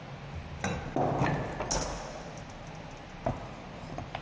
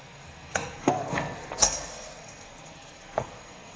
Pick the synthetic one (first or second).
second